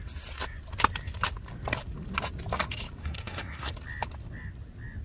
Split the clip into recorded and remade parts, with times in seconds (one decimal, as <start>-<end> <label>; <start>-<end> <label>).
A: 0.0-3.0 recorded; 3.0-3.7 remade; 3.7-5.0 recorded